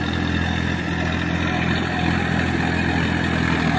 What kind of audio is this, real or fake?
real